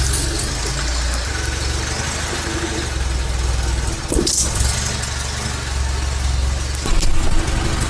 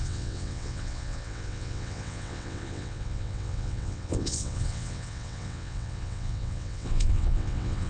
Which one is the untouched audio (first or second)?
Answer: first